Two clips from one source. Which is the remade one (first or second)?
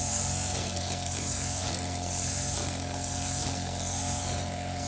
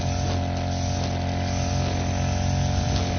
first